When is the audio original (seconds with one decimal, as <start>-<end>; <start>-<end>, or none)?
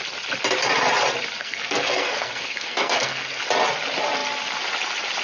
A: 0.0-1.4; 3.4-5.2